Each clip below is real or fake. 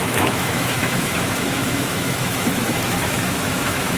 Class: fake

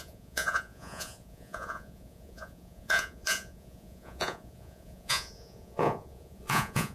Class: fake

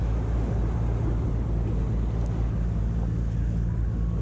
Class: real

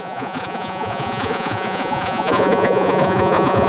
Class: fake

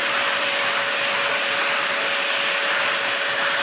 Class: real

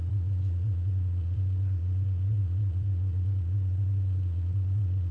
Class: fake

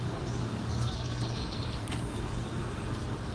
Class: fake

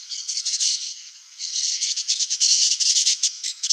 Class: fake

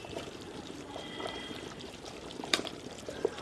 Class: fake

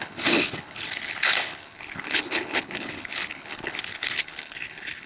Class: fake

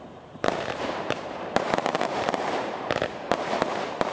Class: fake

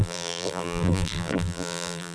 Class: fake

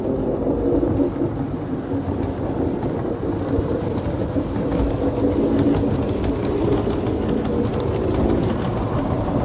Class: real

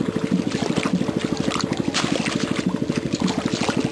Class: real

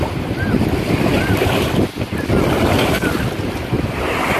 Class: real